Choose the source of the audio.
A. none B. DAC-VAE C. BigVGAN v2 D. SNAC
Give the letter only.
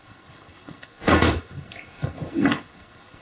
D